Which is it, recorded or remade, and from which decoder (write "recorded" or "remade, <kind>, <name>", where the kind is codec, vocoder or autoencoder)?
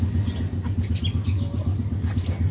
recorded